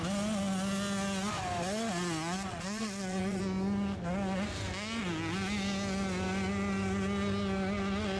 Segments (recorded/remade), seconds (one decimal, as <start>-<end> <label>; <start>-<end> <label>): 0.0-2.5 recorded; 2.5-3.4 remade; 3.4-8.2 recorded